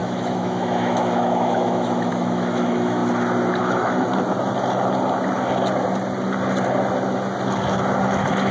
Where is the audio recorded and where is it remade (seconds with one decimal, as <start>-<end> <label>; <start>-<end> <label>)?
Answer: 0.0-3.0 remade; 3.0-3.6 recorded; 3.6-4.1 remade; 4.1-8.5 recorded